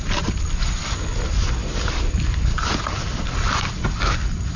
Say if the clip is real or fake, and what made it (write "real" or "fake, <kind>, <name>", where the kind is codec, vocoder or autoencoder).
fake, vocoder, BigVGAN v2